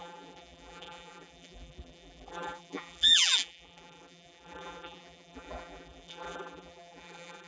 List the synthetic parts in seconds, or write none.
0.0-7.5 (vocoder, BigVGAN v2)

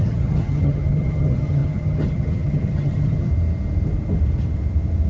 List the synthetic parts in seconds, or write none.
0.0-3.3 (vocoder, HiFi-GAN)

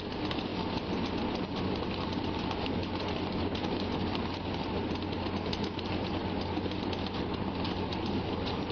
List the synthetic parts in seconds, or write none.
none

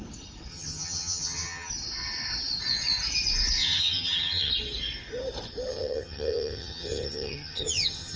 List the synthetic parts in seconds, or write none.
0.5-1.7 (vocoder, HiFi-GAN); 3.6-4.5; 5.7-8.2

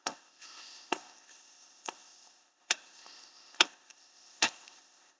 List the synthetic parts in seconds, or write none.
0.0-5.2 (codec, ZipCodec)

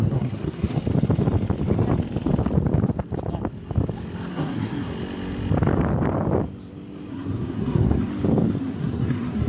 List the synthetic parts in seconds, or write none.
0.0-0.8 (codec, SNAC); 4.3-4.9; 7.1-8.1; 8.6-9.5

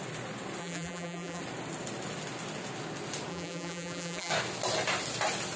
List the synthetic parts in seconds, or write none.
0.6-1.4 (vocoder, BigVGAN v2); 3.3-4.3